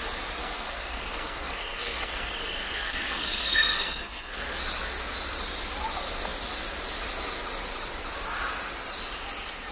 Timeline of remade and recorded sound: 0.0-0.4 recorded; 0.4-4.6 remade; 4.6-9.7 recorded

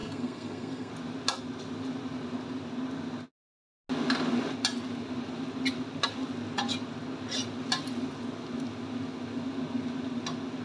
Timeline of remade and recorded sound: 0.0-0.9 remade; 0.9-10.6 recorded

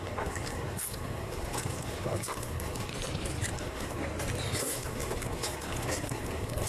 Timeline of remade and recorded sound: 0.0-2.9 remade; 2.9-3.5 recorded; 3.5-4.0 remade; 4.0-4.6 recorded; 4.6-6.7 remade

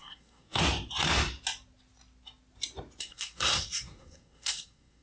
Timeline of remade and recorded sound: 0.0-0.6 remade; 0.6-3.0 recorded; 3.0-5.0 remade

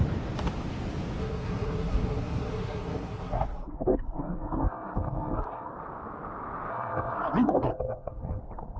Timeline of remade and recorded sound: 0.0-1.2 recorded; 1.2-5.7 remade; 5.7-6.7 recorded; 6.7-8.4 remade; 8.4-8.8 recorded

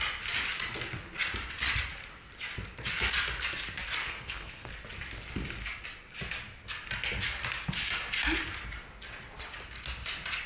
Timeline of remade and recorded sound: 0.0-4.0 recorded; 4.0-4.7 remade; 4.7-10.5 recorded

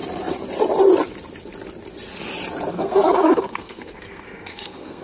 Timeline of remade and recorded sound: 0.0-2.7 recorded; 2.7-5.0 remade

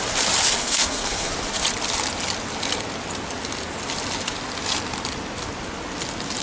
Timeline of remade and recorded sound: 0.0-0.6 recorded; 0.6-1.3 remade; 1.3-6.4 recorded